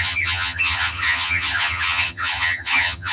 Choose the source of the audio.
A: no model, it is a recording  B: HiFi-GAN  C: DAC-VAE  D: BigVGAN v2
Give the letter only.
B